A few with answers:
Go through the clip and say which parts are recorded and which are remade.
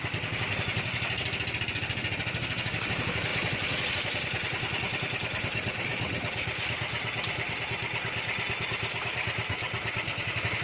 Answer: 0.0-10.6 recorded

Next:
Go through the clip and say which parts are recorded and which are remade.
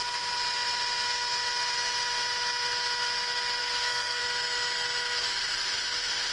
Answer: 0.0-3.6 recorded; 3.6-4.2 remade; 4.2-6.3 recorded